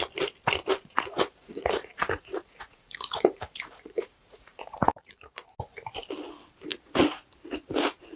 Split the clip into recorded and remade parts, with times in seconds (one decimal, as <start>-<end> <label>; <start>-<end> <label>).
0.0-0.9 recorded; 0.9-5.5 remade; 5.5-6.7 recorded; 6.7-7.3 remade; 7.3-8.2 recorded